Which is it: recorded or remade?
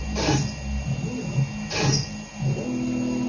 recorded